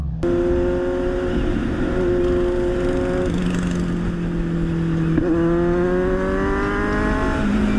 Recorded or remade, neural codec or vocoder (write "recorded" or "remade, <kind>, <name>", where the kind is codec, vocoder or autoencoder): recorded